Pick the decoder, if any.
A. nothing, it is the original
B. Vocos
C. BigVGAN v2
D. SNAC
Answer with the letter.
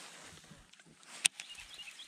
A